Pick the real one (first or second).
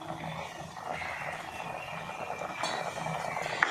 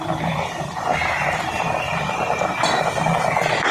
first